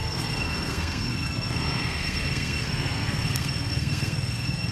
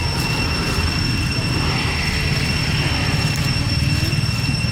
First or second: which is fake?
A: first